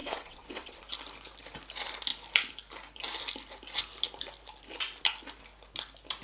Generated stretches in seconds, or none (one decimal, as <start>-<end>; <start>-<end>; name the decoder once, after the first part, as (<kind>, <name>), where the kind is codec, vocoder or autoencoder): 0.0-0.8 (vocoder, WaveNeXt)